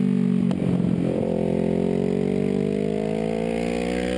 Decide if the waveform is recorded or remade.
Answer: recorded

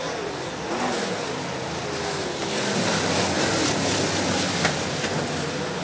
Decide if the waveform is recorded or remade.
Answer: recorded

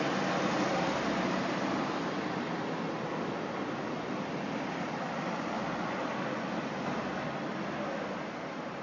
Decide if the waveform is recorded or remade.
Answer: recorded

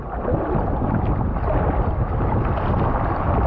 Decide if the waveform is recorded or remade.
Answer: recorded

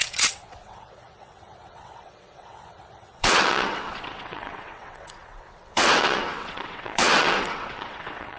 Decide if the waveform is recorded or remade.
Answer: remade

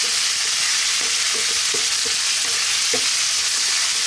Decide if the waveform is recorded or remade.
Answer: recorded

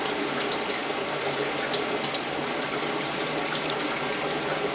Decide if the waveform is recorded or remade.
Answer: recorded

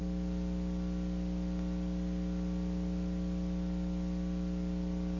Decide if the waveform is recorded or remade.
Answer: recorded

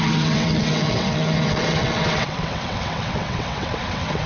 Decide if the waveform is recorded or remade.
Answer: remade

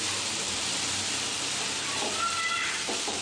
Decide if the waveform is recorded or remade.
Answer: recorded